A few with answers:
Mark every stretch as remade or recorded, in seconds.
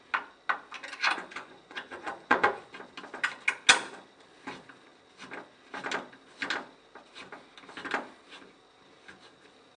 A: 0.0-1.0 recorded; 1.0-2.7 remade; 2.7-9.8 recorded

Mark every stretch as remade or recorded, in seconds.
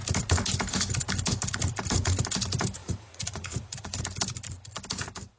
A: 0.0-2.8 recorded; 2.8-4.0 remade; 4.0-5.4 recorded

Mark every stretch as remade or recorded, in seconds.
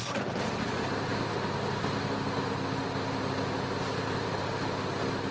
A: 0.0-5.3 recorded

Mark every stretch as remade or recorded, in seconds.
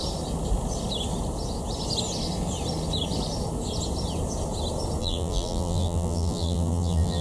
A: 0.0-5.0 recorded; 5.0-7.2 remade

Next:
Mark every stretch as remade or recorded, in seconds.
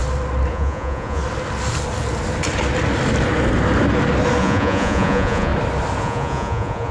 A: 0.0-0.5 recorded; 0.5-1.2 remade; 1.2-4.4 recorded; 4.4-5.5 remade; 5.5-6.0 recorded; 6.0-6.9 remade